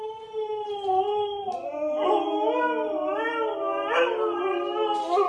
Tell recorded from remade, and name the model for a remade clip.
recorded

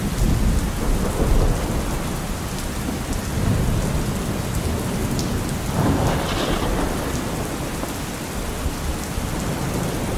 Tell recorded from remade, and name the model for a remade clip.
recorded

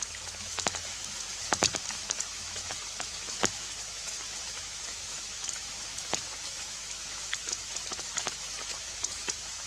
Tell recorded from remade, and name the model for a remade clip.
remade, autoencoder, DAC-VAE